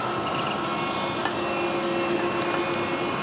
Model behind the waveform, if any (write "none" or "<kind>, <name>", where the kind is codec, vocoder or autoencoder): none